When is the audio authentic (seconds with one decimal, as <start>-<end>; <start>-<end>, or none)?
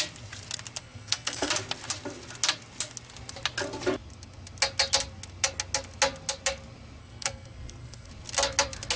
0.0-0.8; 1.5-7.0; 8.1-9.0